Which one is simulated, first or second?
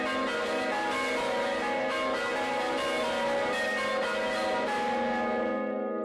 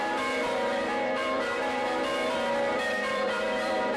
second